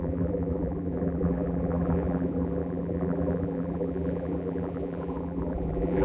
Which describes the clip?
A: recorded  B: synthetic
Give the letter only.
B